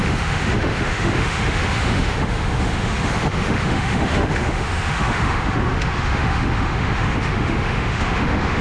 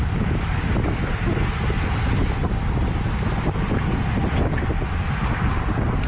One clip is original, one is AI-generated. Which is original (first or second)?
second